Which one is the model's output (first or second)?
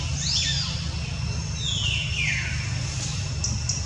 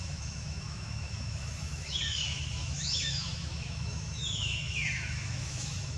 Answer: second